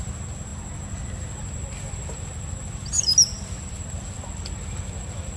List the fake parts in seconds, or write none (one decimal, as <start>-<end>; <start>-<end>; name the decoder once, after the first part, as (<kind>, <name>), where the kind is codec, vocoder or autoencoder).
none